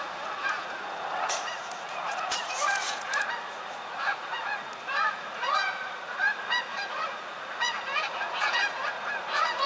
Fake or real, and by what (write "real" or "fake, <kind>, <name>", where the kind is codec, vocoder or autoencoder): fake, vocoder, Vocos